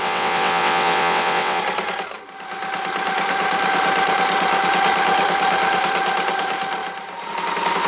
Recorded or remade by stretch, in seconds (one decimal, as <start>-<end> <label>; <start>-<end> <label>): 0.0-1.6 remade; 1.6-7.9 recorded